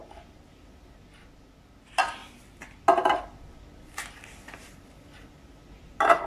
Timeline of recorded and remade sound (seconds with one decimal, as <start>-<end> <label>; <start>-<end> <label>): 0.0-6.3 recorded